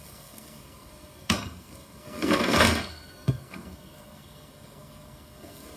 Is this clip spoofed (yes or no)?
yes